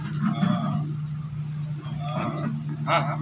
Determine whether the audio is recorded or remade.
recorded